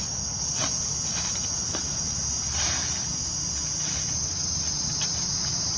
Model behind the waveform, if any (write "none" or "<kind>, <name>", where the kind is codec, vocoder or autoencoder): none